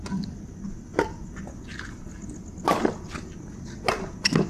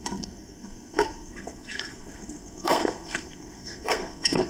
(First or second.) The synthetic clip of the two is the second